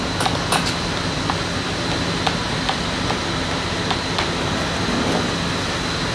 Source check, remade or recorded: recorded